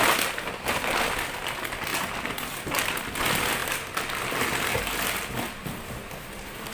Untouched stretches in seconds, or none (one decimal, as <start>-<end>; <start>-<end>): 0.0-6.7